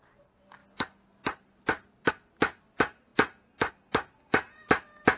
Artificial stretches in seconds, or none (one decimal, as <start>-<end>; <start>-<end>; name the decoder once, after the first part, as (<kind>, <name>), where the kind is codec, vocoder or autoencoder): none